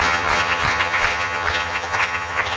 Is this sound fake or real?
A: fake